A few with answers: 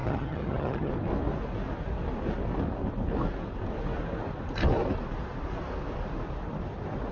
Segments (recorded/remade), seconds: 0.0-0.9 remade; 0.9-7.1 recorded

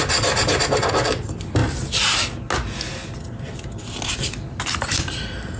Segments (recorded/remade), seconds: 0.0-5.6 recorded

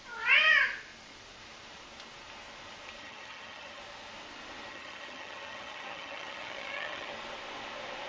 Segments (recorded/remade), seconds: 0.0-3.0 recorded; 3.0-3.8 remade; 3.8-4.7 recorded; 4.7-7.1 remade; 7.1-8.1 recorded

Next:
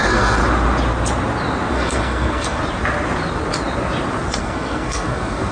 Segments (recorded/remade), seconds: 0.0-0.4 remade; 0.4-1.7 recorded; 1.7-2.6 remade; 2.6-4.4 recorded; 4.4-5.5 remade